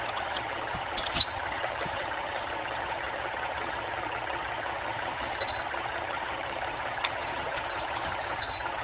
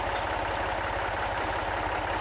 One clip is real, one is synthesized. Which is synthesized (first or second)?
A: first